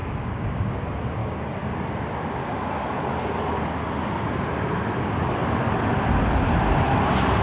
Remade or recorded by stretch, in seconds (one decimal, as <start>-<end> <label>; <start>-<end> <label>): 0.0-0.7 remade; 0.7-1.2 recorded; 1.2-1.8 remade; 1.8-2.4 recorded; 2.4-3.0 remade; 3.0-7.4 recorded